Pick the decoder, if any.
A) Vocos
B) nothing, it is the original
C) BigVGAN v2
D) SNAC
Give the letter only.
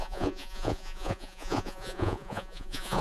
A